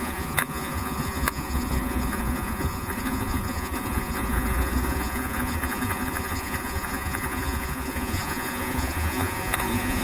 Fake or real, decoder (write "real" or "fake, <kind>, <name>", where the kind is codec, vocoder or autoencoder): fake, vocoder, Vocos